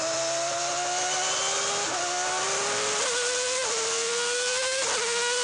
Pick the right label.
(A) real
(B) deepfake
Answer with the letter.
A